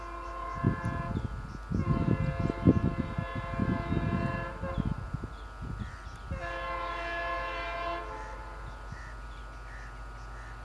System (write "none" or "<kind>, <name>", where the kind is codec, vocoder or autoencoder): none